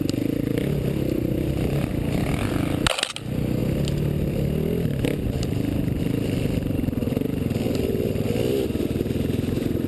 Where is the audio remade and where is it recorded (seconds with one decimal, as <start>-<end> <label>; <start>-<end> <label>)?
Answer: 0.0-9.9 recorded